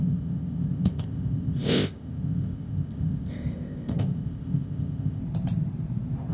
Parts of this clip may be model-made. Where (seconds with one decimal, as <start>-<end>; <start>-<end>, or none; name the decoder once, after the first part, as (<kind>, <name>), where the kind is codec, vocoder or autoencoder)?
0.0-5.2 (codec, ZipCodec)